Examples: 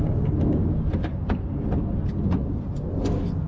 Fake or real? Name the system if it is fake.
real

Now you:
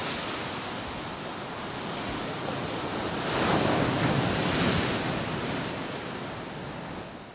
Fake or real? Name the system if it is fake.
real